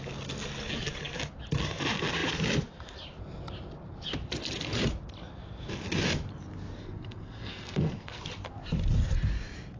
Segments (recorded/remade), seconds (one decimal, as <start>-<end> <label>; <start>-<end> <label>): 0.0-6.8 recorded; 6.8-8.2 remade; 8.2-9.8 recorded